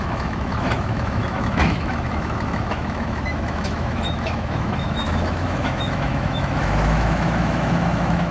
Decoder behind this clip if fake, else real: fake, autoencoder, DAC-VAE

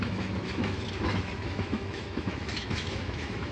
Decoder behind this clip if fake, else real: fake, autoencoder, DAC-VAE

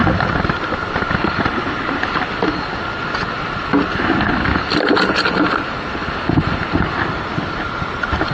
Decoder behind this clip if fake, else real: real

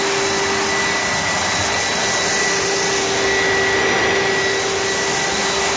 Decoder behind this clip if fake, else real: real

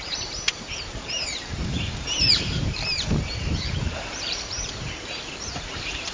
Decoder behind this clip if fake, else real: fake, vocoder, BigVGAN v2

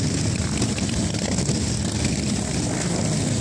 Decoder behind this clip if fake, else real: real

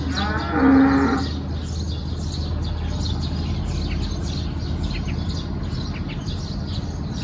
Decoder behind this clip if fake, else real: real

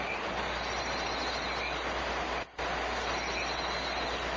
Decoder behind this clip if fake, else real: real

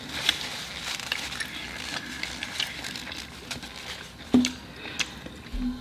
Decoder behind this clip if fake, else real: real